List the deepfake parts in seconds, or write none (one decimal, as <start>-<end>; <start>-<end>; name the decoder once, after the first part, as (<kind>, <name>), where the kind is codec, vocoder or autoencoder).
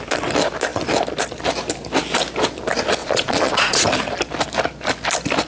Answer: 3.0-3.8 (vocoder, Vocos)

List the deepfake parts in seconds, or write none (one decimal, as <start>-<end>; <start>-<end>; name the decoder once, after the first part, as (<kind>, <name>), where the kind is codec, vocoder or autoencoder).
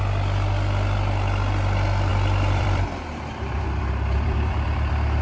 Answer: 2.1-5.2 (vocoder, BigVGAN v2)